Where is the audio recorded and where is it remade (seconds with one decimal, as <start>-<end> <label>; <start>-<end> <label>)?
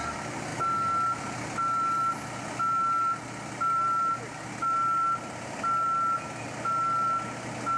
0.0-7.8 recorded